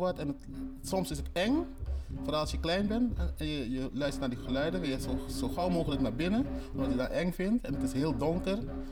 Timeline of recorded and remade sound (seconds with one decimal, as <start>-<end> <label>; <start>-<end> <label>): 0.0-4.4 recorded; 4.4-7.6 remade; 7.6-8.9 recorded